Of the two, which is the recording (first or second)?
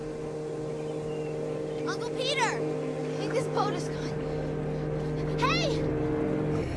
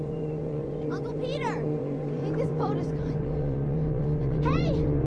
first